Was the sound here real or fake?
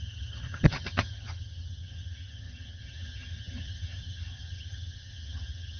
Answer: fake